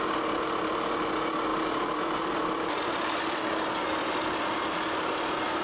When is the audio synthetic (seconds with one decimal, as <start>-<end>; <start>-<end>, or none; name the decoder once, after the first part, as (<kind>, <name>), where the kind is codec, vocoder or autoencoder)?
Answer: 1.5-4.4 (vocoder, BigVGAN v2)